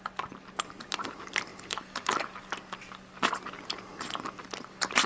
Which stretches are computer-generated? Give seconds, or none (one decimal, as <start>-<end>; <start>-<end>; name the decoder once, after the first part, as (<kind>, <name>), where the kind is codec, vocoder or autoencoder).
none